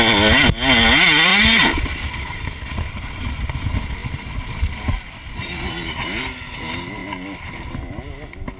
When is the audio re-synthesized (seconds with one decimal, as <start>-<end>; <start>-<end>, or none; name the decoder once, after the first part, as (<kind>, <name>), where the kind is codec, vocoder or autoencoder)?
none